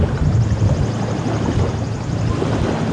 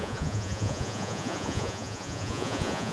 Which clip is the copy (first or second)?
second